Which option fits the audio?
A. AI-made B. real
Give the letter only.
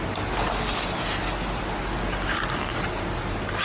B